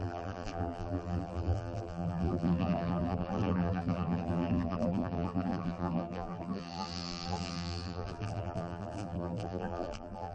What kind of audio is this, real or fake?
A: fake